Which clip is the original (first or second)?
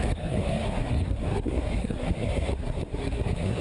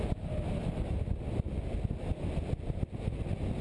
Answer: second